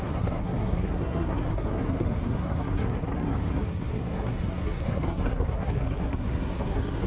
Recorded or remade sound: remade